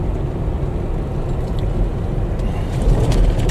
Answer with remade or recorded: recorded